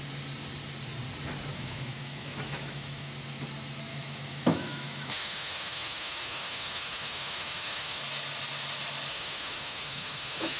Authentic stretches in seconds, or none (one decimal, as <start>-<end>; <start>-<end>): 0.0-1.5; 3.1-3.9; 8.0-9.1